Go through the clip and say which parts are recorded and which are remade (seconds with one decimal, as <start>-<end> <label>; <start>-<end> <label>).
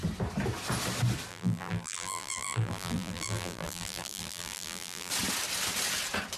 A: 0.0-1.3 recorded; 1.3-5.1 remade; 5.1-6.4 recorded